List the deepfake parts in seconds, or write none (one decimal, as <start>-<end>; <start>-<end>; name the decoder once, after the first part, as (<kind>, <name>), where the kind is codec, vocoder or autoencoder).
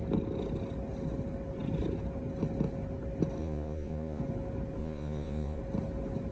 3.4-4.2 (vocoder, Vocos); 4.8-5.6